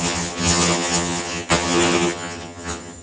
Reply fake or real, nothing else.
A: fake